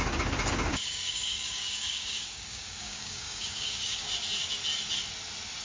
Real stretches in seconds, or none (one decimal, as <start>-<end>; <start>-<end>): 0.0-0.7; 4.1-5.6